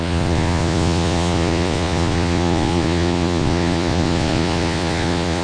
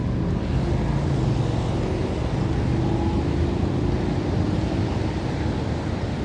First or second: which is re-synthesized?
first